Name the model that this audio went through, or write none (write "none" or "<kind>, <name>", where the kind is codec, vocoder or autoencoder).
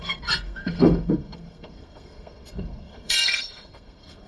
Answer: codec, SNAC